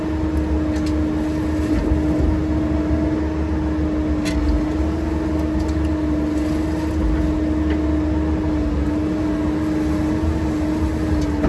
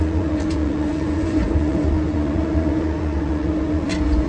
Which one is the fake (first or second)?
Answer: second